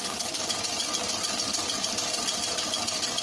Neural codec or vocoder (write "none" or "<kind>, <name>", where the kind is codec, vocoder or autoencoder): none